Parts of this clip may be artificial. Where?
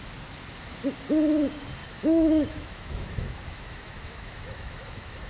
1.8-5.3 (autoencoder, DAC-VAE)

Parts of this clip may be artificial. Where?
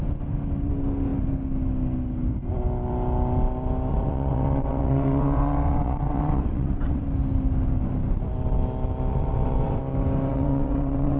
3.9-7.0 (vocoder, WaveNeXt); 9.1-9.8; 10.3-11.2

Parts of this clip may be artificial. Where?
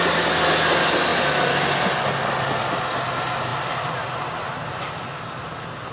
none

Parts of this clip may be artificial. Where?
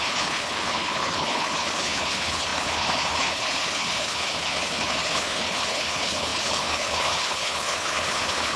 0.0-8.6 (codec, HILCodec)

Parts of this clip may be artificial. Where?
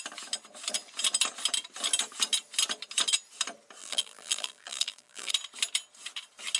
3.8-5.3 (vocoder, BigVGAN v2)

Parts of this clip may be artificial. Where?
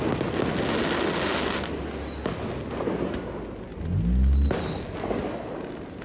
none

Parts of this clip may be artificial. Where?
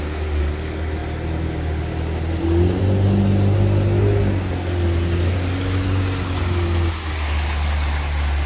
none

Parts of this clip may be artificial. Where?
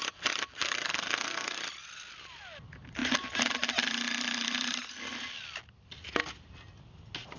0.6-1.6 (codec, SNAC)